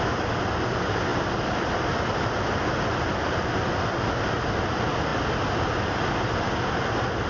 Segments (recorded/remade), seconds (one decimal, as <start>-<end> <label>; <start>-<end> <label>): 0.0-7.3 recorded